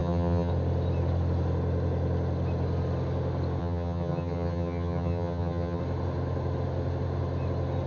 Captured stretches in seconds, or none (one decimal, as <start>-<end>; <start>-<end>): 0.5-3.6; 5.8-7.9